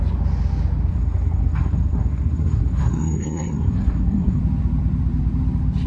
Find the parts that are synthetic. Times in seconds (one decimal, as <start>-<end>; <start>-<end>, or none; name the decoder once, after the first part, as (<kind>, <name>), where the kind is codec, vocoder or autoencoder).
0.9-4.4 (codec, SNAC)